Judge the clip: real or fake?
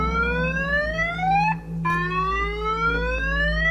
real